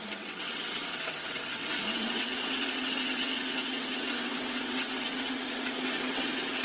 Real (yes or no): no